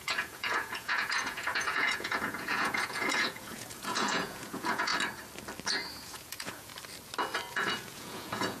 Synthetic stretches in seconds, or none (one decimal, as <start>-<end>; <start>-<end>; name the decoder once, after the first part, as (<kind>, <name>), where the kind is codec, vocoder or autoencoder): 0.0-4.9 (vocoder, Vocos); 5.9-6.7; 7.5-8.6